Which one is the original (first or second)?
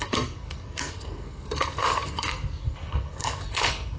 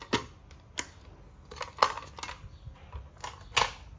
second